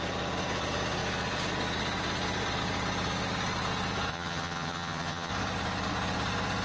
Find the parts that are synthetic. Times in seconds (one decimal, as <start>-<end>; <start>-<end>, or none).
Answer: 4.1-5.3